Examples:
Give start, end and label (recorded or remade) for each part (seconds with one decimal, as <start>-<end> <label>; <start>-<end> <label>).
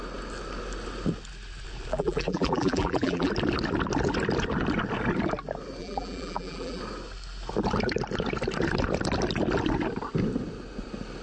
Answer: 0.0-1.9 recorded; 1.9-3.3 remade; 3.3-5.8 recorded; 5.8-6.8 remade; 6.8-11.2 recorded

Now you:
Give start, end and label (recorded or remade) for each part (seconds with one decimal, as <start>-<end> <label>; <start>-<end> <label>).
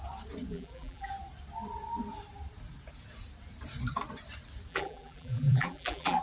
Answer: 0.0-0.5 recorded; 0.5-1.1 remade; 1.1-4.7 recorded; 4.7-6.2 remade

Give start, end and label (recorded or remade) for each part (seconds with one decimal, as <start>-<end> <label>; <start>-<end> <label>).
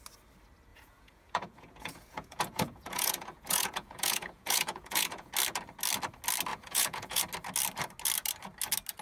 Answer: 0.0-0.7 recorded; 0.7-5.3 remade; 5.3-6.5 recorded; 6.5-7.2 remade; 7.2-9.0 recorded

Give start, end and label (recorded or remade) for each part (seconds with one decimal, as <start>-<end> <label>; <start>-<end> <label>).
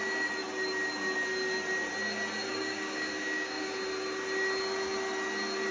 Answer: 0.0-2.5 recorded; 2.5-3.7 remade; 3.7-5.7 recorded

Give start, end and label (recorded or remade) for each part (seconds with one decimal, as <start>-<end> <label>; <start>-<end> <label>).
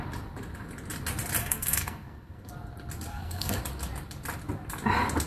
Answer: 0.0-1.4 recorded; 1.4-2.5 remade; 2.5-3.1 recorded; 3.1-3.6 remade; 3.6-5.3 recorded